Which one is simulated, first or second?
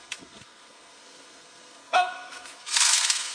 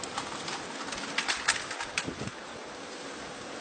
first